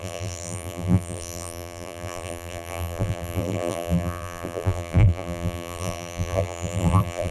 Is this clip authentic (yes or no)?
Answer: no